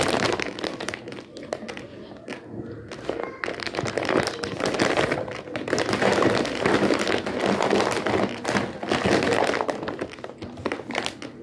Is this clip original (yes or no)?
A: yes